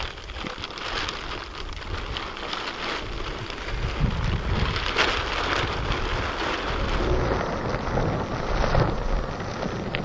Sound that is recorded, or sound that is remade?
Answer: recorded